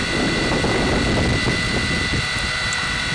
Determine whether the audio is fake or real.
real